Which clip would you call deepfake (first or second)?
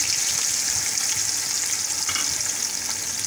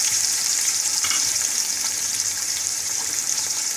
second